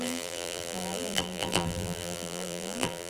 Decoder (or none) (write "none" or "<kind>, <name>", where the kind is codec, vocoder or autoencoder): vocoder, BigVGAN v2